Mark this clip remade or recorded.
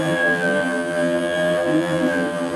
remade